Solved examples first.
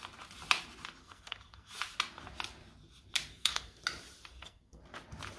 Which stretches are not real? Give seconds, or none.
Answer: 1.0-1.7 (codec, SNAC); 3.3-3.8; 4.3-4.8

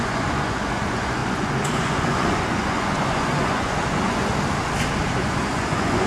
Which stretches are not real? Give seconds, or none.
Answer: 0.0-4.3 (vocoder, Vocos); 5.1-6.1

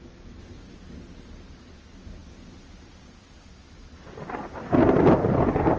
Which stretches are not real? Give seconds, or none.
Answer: none

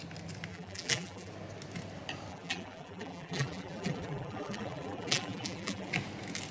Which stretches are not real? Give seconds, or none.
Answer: 0.5-1.3 (vocoder, BigVGAN v2); 2.3-5.9

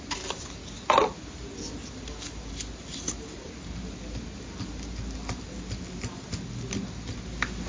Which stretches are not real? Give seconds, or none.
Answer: none

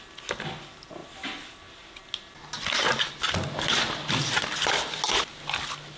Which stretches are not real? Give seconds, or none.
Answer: none

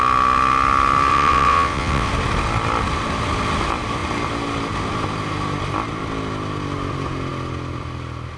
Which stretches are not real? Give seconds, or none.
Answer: 1.1-2.1 (vocoder, WaveNeXt)

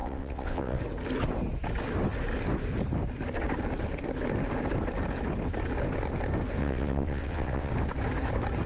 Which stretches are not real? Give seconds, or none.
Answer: 0.0-0.8 (vocoder, WaveNeXt); 6.6-7.7